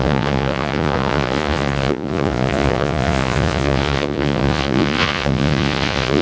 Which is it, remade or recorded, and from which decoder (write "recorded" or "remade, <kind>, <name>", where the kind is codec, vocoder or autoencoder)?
remade, vocoder, Vocos